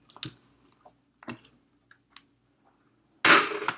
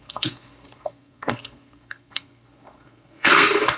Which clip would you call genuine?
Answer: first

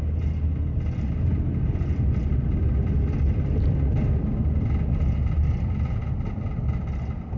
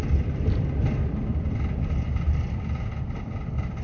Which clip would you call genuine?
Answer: first